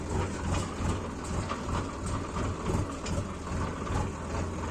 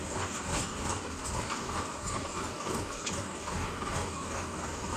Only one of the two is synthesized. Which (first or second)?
second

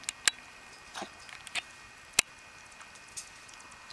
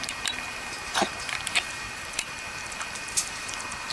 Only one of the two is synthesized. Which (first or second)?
second